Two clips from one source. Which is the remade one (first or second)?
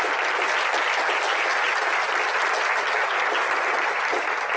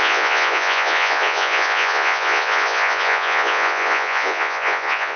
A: second